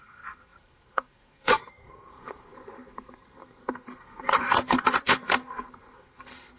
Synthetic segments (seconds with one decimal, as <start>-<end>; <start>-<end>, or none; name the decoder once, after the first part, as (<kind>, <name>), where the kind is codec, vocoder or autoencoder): 0.0-6.6 (codec, SNAC)